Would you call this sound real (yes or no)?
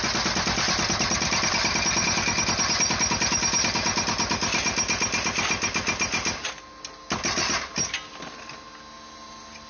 yes